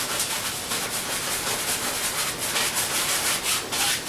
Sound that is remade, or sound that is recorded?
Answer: recorded